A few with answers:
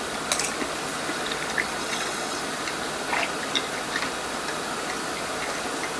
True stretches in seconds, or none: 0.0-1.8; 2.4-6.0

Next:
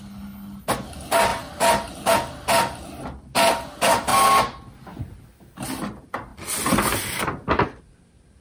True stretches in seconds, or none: 0.0-8.4

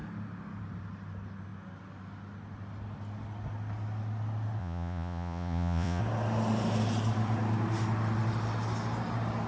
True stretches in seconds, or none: 0.0-4.6; 6.0-9.5

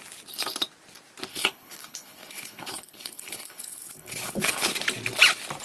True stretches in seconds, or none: 0.0-1.3; 4.7-5.6

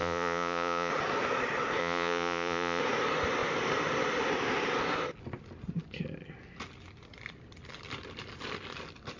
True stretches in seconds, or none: 0.9-1.8; 2.8-9.2

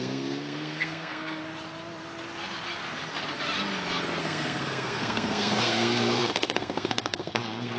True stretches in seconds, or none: 1.4-4.2